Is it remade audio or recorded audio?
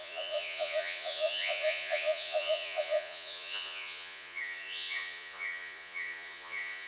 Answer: remade